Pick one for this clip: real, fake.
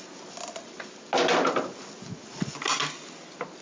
real